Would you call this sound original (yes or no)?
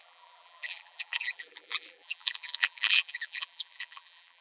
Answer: no